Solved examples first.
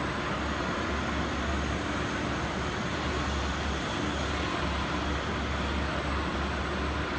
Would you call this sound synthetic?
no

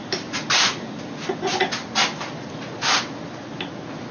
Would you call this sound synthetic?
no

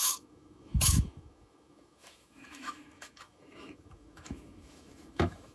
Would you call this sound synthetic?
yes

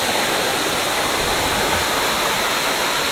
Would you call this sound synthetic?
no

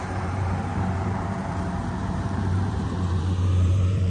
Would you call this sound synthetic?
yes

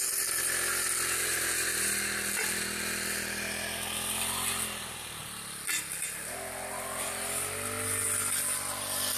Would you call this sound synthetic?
no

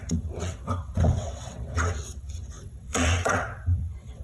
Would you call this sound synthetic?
yes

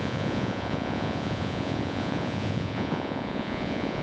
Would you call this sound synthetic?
yes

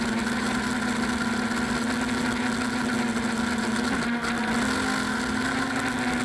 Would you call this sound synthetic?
no